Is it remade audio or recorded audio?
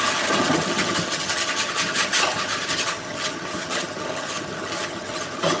remade